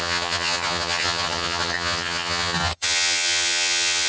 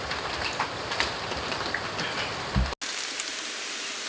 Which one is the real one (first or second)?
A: second